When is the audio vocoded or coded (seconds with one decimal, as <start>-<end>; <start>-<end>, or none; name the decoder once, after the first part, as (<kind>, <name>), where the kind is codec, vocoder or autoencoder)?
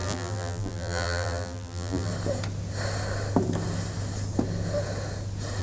0.0-2.1 (vocoder, BigVGAN v2)